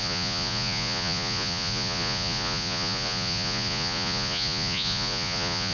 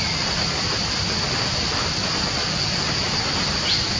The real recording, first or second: second